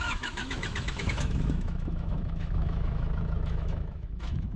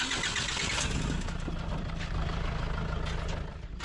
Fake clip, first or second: first